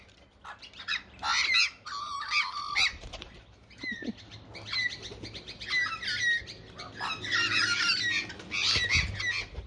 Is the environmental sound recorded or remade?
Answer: recorded